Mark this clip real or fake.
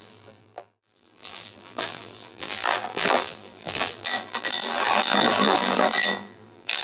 fake